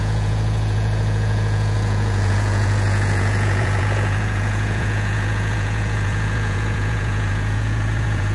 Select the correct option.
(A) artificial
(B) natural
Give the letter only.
A